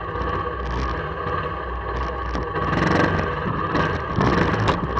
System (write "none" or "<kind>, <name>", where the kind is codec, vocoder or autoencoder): none